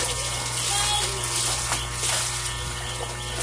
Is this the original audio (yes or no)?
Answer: yes